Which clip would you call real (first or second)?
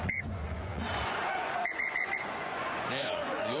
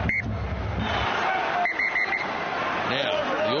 second